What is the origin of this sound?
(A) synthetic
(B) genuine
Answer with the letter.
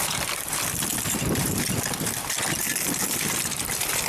B